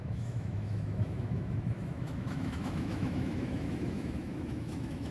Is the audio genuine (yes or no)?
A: no